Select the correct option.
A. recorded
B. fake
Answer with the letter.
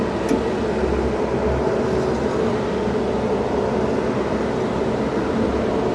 A